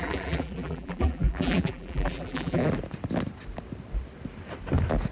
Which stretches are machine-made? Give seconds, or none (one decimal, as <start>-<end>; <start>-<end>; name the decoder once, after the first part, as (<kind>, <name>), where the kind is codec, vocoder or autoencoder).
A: 0.0-2.6 (vocoder, BigVGAN v2)